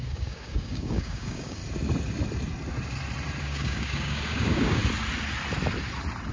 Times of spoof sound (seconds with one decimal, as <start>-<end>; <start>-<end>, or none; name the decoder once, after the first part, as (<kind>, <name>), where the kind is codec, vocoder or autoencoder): 0.0-1.6 (codec, DAC); 3.4-4.8

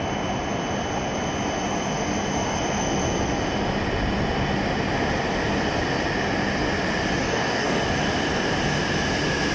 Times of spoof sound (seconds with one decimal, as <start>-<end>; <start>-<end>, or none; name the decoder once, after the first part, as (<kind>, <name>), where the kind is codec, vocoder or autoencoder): 7.2-7.8 (codec, DAC)

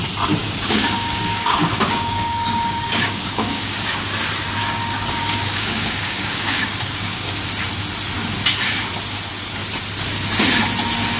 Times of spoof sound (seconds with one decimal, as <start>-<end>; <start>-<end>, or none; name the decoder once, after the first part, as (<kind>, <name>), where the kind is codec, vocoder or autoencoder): 0.4-3.9 (codec, DAC); 4.6-7.3

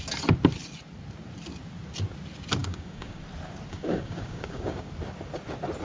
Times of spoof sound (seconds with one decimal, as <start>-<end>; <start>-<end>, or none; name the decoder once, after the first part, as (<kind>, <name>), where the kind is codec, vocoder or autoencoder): 2.6-3.2 (codec, DAC); 3.7-4.9

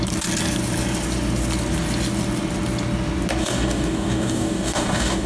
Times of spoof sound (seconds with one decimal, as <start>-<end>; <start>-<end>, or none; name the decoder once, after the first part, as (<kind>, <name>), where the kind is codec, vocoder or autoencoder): 3.4-5.3 (codec, DAC)